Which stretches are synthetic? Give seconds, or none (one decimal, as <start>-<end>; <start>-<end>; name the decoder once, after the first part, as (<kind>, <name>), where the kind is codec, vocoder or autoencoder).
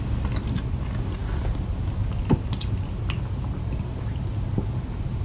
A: none